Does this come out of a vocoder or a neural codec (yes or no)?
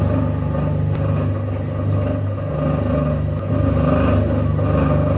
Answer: no